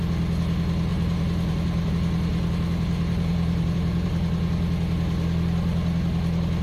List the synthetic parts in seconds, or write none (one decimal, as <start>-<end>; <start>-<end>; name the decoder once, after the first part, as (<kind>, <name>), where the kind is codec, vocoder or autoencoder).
0.9-1.9 (vocoder, BigVGAN v2); 2.3-4.1